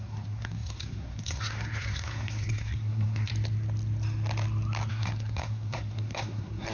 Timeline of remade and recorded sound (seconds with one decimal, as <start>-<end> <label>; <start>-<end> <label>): 0.0-3.3 remade; 3.3-4.9 recorded; 4.9-6.7 remade

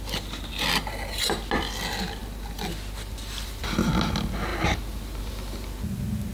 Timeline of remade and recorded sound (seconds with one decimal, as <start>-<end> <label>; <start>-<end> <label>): 0.0-6.3 recorded

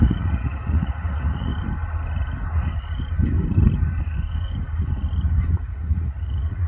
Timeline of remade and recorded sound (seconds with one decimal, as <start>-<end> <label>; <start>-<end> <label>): 0.0-1.5 remade; 1.5-5.5 recorded; 5.5-6.7 remade

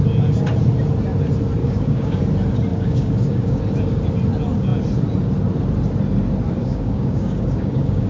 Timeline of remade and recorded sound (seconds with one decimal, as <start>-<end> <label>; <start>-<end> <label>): 0.0-1.6 recorded; 1.6-2.2 remade; 2.2-2.7 recorded; 2.7-3.6 remade; 3.6-6.6 recorded; 6.6-8.1 remade